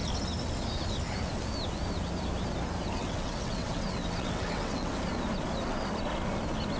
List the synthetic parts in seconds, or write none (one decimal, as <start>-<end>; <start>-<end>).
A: 3.0-4.9